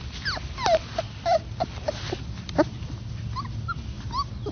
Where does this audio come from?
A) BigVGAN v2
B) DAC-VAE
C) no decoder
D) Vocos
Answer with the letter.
C